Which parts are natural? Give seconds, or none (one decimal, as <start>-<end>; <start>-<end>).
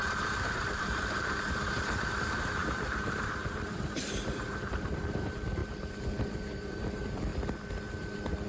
7.3-8.5